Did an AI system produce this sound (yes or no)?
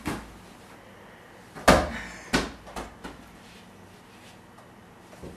no